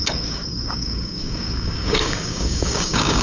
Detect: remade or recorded remade